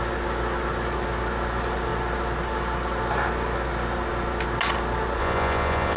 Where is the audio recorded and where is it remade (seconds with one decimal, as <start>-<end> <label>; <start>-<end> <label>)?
0.0-5.2 recorded; 5.2-6.0 remade